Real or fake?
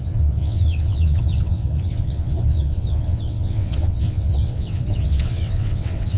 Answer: fake